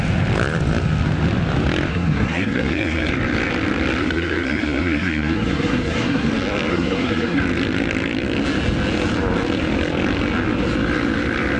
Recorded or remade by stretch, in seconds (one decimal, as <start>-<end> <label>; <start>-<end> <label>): 0.0-1.9 recorded; 1.9-3.1 remade; 3.1-4.0 recorded; 4.0-6.3 remade; 6.3-6.7 recorded; 6.7-7.4 remade; 7.4-11.6 recorded